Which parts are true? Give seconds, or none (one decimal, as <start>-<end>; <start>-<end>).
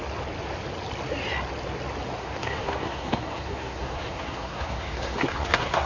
0.0-2.2